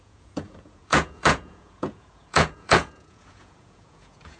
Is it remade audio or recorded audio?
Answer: remade